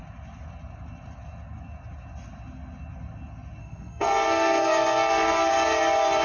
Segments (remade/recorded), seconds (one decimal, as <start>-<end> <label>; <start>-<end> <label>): 0.0-3.6 recorded; 3.6-5.5 remade; 5.5-6.2 recorded